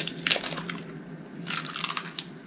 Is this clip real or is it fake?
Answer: real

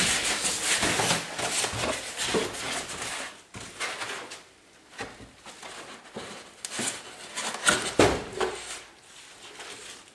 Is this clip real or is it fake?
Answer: real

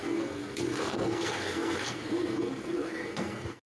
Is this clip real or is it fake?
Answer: fake